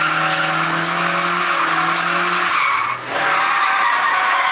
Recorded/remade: recorded